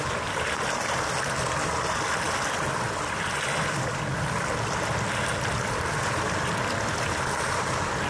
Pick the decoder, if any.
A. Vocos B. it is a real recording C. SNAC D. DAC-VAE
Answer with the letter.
B